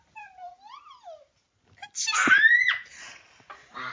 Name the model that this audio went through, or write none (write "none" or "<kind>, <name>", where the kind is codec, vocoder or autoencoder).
none